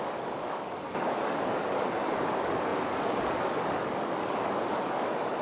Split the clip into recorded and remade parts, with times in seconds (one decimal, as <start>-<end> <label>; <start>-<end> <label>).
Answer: 0.0-5.4 remade